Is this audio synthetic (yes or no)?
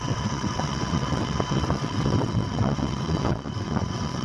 yes